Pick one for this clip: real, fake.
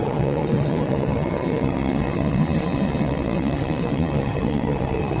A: fake